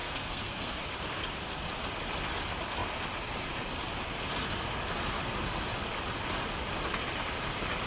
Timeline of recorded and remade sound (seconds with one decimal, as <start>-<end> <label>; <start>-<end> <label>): 0.0-0.8 remade; 0.8-7.9 recorded